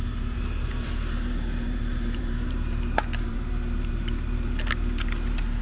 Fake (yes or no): yes